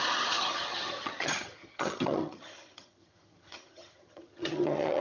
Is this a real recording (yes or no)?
no